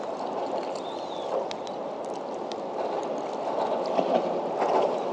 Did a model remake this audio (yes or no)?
no